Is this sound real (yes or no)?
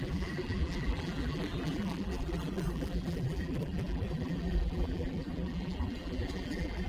no